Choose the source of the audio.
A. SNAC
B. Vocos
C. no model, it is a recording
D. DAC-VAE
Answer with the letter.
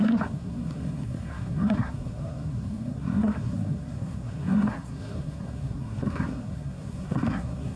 A